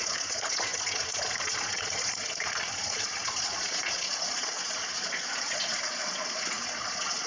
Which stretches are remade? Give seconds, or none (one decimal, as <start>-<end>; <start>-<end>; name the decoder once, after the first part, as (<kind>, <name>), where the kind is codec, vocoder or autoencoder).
0.0-7.3 (vocoder, Vocos)